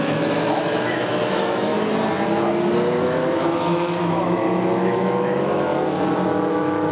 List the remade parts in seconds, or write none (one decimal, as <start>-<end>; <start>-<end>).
0.0-1.7; 3.0-5.7; 6.5-6.9